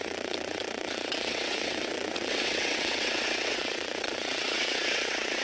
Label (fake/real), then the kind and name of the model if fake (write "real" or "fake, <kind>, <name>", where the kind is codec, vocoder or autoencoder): fake, vocoder, WaveNeXt